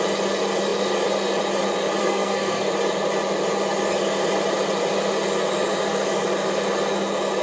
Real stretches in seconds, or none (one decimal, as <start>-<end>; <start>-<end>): 0.0-2.0; 2.7-7.4

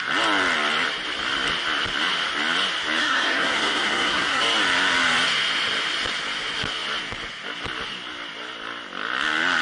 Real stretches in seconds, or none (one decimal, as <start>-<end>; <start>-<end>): 0.0-3.0; 4.4-9.6

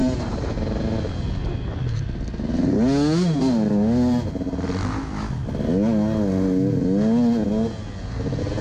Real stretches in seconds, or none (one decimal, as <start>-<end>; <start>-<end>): 0.0-8.6